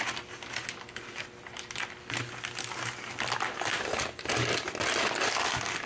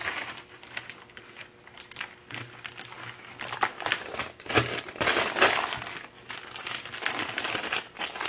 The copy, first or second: second